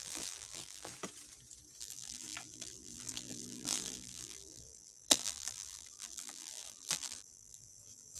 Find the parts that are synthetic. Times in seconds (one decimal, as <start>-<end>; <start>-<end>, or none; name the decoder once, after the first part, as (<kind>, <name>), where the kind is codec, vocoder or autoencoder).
0.0-0.9 (vocoder, BigVGAN v2); 1.8-8.2